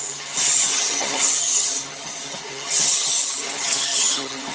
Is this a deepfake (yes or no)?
yes